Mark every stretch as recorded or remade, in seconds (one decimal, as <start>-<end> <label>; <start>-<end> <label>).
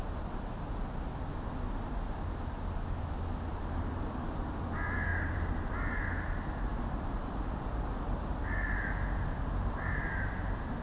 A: 0.0-3.5 recorded; 3.5-4.1 remade; 4.1-5.1 recorded; 5.1-5.7 remade; 5.7-6.7 recorded; 6.7-7.9 remade; 7.9-10.8 recorded